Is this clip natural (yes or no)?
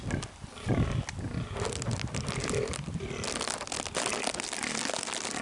yes